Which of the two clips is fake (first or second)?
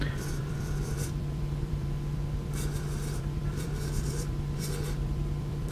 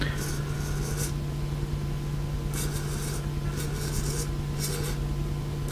first